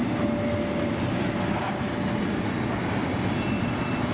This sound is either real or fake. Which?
real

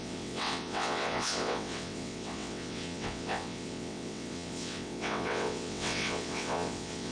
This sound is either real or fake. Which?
fake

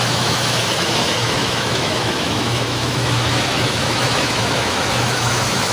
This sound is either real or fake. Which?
fake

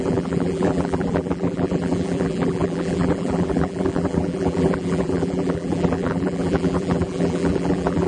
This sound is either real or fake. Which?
fake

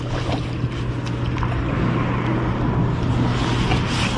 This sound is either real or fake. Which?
real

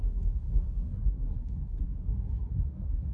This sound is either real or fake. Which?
fake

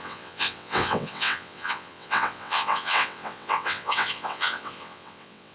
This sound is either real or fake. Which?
fake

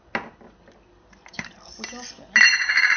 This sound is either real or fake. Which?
real